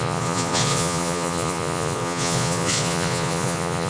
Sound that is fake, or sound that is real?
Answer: fake